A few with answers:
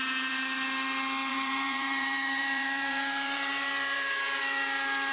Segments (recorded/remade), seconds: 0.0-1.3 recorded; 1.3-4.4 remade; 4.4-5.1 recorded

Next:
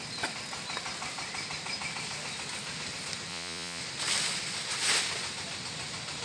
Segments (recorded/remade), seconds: 0.0-3.3 recorded; 3.3-3.8 remade; 3.8-6.2 recorded